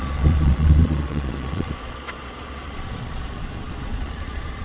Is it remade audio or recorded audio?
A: remade